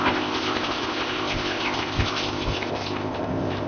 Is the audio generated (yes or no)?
yes